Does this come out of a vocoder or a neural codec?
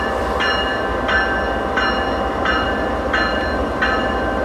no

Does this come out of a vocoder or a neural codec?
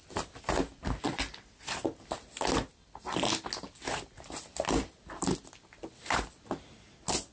no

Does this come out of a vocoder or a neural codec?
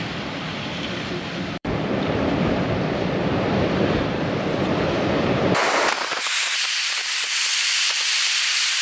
yes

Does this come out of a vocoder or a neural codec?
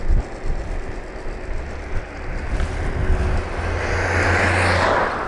no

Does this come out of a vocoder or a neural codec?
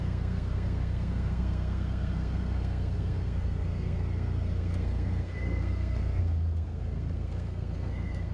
yes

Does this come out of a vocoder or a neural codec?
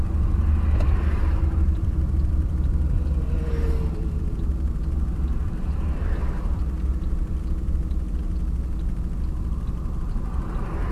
yes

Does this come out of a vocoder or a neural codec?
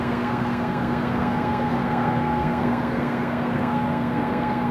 yes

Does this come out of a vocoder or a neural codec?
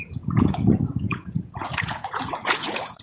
yes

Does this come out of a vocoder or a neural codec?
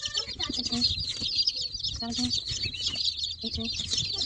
no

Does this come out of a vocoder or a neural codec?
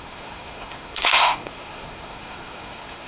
yes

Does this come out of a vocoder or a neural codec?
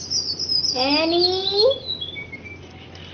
no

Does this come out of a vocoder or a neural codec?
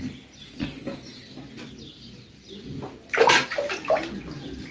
no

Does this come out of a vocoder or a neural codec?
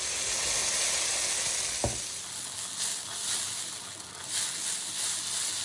no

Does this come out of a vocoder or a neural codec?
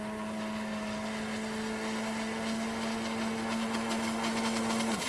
no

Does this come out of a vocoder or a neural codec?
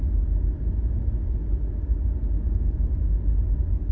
no